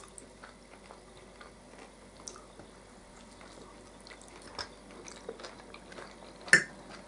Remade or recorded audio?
recorded